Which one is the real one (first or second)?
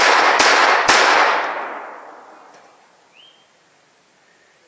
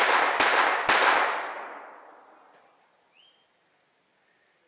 first